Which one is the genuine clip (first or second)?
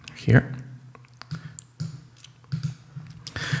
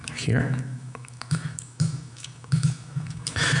first